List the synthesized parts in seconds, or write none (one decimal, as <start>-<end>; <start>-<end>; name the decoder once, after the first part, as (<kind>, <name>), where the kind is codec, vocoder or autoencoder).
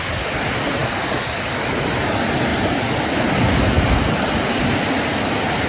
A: none